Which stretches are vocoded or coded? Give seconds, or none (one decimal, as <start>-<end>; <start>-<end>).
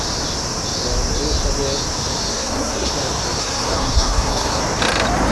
2.3-2.9; 3.4-4.6